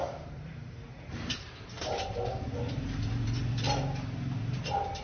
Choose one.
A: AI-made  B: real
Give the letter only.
A